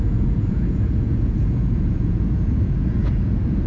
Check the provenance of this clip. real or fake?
fake